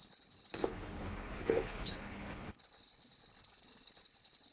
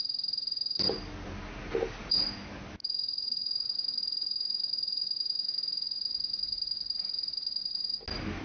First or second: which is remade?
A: first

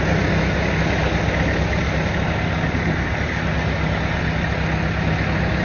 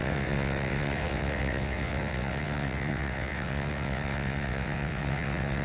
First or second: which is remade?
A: second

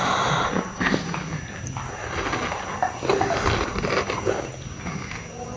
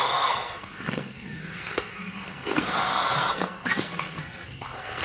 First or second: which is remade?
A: second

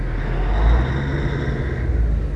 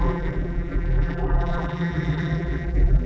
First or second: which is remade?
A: second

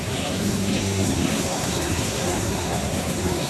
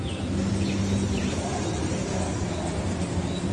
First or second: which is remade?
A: first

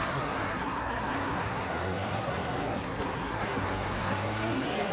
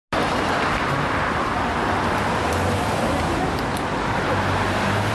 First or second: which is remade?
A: first